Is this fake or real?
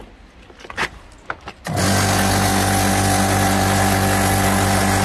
real